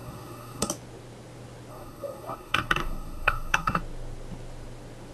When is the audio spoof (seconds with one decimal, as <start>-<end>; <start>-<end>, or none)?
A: 0.0-0.7; 1.7-3.8